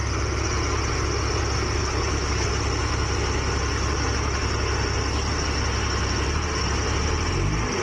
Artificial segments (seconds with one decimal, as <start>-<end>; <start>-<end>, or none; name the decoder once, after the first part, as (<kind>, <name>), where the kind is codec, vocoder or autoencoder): 1.8-2.5 (codec, HILCodec)